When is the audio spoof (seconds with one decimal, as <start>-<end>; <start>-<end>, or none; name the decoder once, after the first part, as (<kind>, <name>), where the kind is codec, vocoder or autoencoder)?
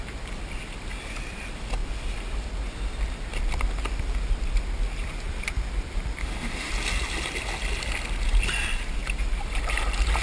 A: 6.2-6.7 (autoencoder, DAC-VAE)